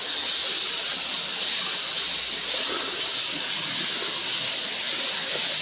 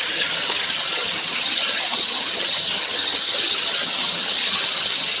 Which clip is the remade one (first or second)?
second